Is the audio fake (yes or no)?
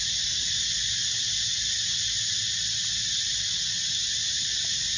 no